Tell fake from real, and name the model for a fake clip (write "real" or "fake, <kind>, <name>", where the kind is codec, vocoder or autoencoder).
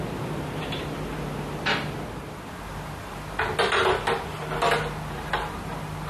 fake, vocoder, BigVGAN v2